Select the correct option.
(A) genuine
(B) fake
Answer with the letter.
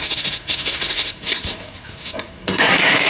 B